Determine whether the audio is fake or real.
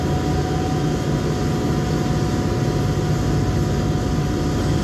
real